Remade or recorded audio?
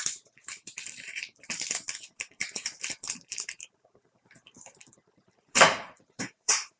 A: remade